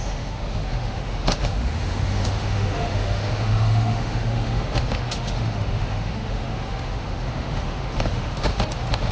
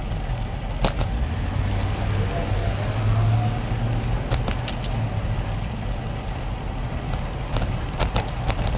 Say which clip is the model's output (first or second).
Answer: first